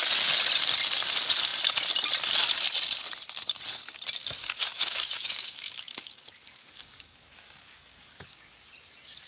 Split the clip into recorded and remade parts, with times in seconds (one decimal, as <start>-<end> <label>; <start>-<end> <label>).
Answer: 0.0-4.4 recorded; 4.4-8.7 remade; 8.7-9.3 recorded

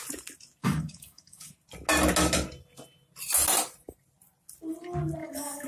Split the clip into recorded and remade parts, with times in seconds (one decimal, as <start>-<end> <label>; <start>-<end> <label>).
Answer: 0.0-0.6 recorded; 0.6-1.5 remade; 1.5-5.2 recorded; 5.2-5.7 remade